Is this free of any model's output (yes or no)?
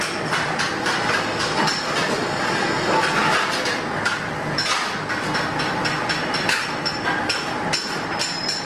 yes